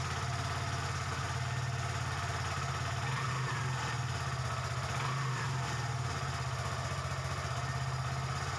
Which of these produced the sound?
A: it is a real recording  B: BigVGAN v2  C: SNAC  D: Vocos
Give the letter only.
A